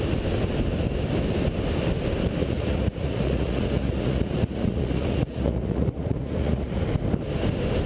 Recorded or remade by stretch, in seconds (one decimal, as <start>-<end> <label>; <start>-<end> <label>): 0.0-2.4 recorded; 2.4-6.8 remade; 6.8-7.9 recorded